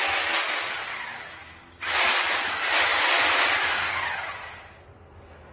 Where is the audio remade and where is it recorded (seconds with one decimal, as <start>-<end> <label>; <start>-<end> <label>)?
0.0-5.5 recorded